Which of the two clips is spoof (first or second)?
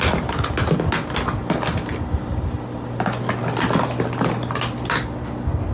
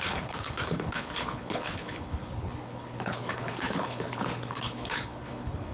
second